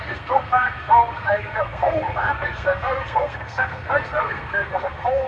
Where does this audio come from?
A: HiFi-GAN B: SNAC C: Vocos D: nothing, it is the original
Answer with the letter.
B